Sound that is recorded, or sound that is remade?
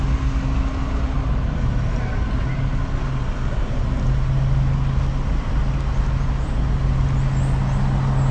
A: recorded